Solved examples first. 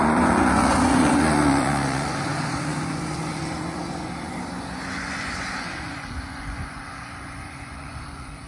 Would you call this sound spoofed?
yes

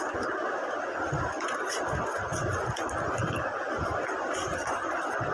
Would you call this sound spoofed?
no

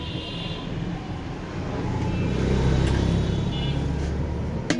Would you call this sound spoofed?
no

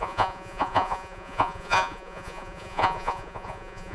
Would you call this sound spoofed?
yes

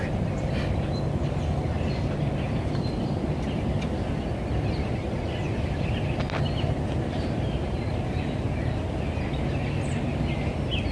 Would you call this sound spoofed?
no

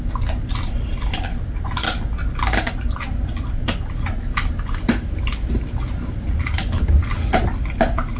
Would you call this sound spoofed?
no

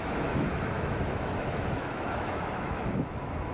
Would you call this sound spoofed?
yes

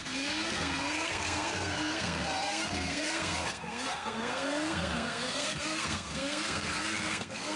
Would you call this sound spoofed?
yes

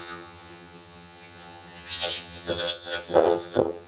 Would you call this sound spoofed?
yes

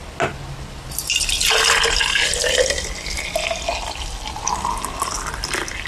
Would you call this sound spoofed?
no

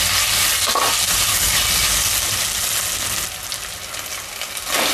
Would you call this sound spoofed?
no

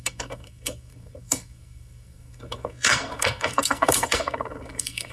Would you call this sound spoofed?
yes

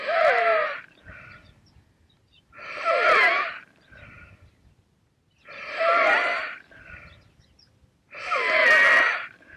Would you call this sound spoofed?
no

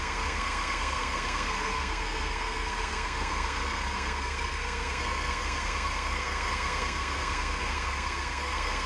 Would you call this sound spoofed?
yes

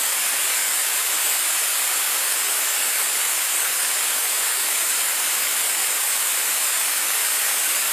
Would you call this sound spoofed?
yes